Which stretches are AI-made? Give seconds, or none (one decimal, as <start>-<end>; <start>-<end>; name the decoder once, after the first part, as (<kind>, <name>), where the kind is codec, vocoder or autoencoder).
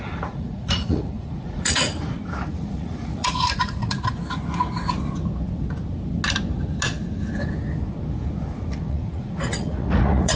0.0-1.9 (vocoder, Vocos); 2.5-4.2; 8.7-10.4